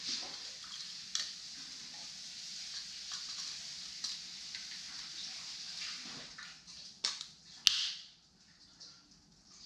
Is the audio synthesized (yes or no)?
no